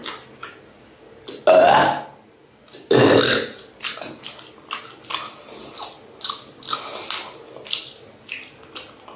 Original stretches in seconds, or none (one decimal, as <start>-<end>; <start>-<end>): 0.0-9.2